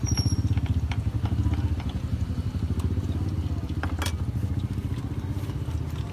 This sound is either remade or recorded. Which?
recorded